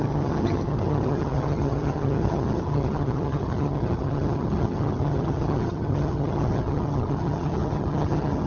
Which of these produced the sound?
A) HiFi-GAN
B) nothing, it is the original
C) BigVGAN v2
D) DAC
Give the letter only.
A